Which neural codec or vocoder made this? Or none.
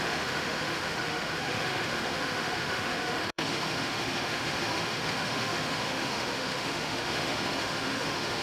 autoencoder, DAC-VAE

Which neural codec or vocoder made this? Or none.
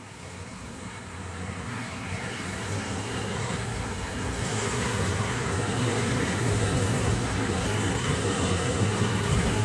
codec, SNAC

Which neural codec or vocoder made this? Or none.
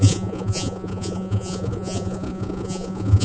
vocoder, Vocos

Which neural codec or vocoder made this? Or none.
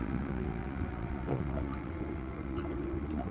vocoder, WaveNeXt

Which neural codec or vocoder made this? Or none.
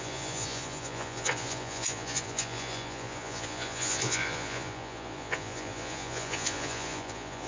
vocoder, Vocos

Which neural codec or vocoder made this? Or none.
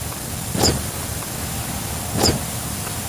vocoder, BigVGAN v2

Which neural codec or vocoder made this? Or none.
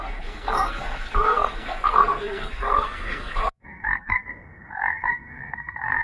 codec, SNAC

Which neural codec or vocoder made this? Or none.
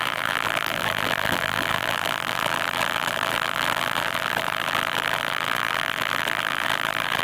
vocoder, BigVGAN v2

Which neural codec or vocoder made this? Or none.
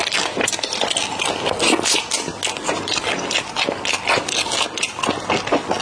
none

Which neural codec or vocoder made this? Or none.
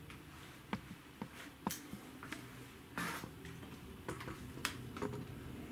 none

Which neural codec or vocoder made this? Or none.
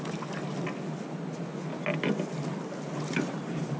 none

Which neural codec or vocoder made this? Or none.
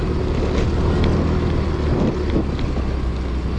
none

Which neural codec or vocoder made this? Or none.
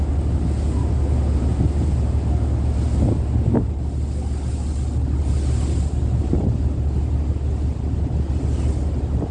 none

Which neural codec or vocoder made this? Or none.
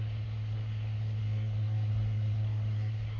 codec, SNAC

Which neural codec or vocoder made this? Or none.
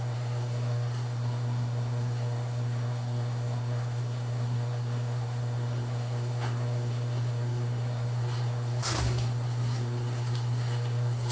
codec, SNAC